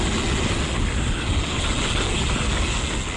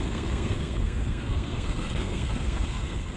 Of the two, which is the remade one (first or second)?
second